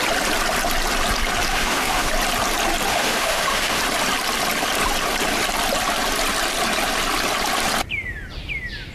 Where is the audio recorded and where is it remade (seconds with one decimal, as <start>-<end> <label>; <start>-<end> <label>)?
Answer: 0.0-1.5 recorded; 1.5-2.1 remade; 2.1-2.9 recorded; 2.9-3.8 remade; 3.8-8.9 recorded

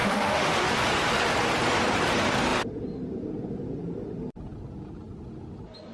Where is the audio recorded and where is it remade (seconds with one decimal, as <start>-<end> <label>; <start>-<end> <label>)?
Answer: 0.0-0.7 remade; 0.7-5.9 recorded

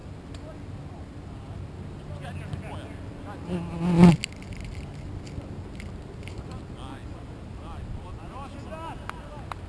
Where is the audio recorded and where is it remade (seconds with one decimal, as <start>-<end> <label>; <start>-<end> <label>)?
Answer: 0.0-9.7 recorded

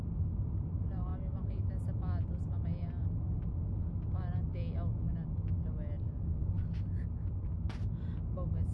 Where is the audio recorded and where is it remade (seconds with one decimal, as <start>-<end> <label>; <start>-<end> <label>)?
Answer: 0.0-8.7 recorded

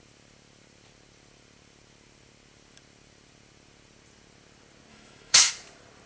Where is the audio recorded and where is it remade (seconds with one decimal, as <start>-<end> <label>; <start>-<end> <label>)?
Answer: 0.0-4.9 recorded; 4.9-5.5 remade; 5.5-6.1 recorded

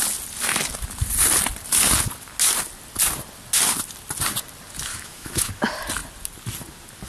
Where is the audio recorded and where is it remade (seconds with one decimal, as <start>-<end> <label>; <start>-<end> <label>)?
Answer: 0.0-4.9 recorded; 4.9-5.5 remade; 5.5-7.1 recorded

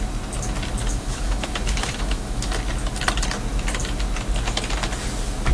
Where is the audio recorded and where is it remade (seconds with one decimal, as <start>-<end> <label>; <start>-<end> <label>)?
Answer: 0.0-0.9 recorded; 0.9-2.5 remade; 2.5-5.5 recorded